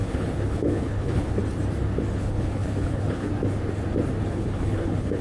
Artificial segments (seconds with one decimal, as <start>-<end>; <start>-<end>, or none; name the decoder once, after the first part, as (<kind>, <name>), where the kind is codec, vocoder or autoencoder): 0.0-1.4 (codec, HILCodec); 2.2-3.3; 4.3-5.2